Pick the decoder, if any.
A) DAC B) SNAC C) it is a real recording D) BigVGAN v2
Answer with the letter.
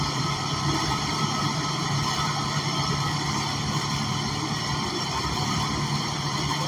D